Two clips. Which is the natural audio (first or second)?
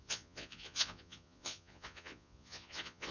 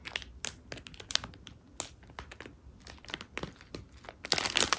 second